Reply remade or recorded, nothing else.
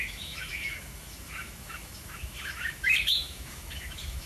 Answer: remade